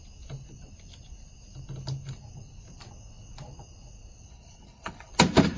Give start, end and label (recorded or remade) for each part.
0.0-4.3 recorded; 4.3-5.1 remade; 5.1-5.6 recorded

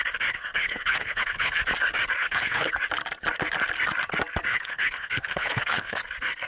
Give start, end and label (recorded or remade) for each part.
0.0-0.5 recorded; 0.5-1.6 remade; 1.6-2.2 recorded; 2.2-2.7 remade; 2.7-4.5 recorded; 4.5-6.0 remade; 6.0-6.5 recorded

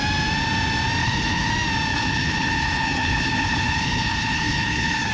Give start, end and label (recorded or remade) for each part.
0.0-1.0 recorded; 1.0-1.5 remade; 1.5-1.9 recorded; 1.9-5.1 remade

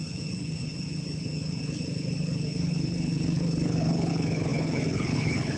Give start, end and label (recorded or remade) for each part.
0.0-5.6 remade

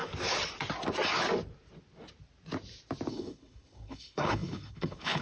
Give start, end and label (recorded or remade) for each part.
0.0-3.1 recorded; 3.1-5.2 remade

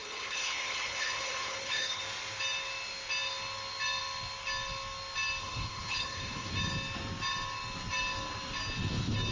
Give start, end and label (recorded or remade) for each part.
0.0-2.0 remade; 2.0-5.4 recorded; 5.4-6.5 remade; 6.5-9.3 recorded